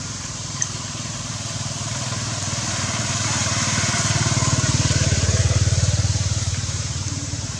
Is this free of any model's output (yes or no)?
no